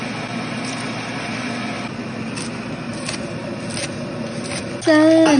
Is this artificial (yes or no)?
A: no